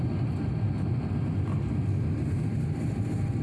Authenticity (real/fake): real